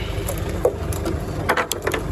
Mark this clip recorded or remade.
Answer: recorded